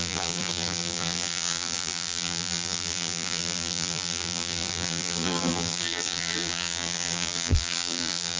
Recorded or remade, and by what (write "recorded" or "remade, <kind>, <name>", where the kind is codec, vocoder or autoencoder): remade, vocoder, BigVGAN v2